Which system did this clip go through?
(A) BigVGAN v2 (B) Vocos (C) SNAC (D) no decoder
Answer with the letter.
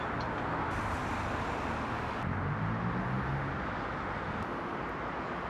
D